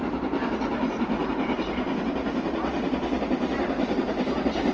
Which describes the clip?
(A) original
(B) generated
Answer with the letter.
A